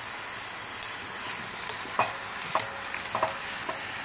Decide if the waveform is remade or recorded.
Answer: recorded